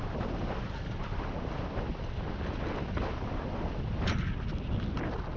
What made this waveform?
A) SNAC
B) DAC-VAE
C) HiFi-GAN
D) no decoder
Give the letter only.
D